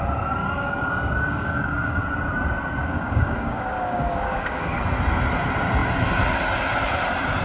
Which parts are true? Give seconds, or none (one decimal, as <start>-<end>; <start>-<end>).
0.0-0.4; 2.0-2.8; 4.8-7.4